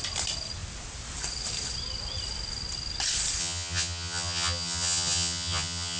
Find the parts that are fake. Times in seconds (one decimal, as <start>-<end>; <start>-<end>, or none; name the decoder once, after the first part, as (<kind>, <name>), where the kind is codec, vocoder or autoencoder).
3.4-6.0 (vocoder, HiFi-GAN)

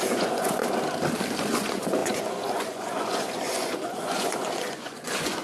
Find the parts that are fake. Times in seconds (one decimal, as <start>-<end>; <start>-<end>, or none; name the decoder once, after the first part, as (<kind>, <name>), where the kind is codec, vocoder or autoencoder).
0.0-0.6 (vocoder, Vocos); 1.4-5.4

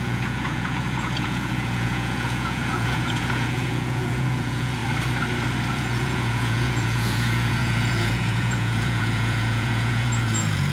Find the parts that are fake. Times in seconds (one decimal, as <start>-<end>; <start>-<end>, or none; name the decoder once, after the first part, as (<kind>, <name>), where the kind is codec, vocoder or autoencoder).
0.0-4.8 (vocoder, Vocos); 5.7-10.7

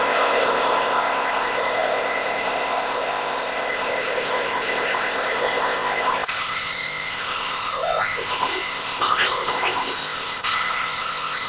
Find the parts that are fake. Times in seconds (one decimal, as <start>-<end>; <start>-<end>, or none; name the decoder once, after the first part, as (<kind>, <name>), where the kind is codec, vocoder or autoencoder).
0.0-11.5 (codec, ZipCodec)